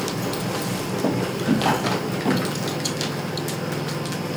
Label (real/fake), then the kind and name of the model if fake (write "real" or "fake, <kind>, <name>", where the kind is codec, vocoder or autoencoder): real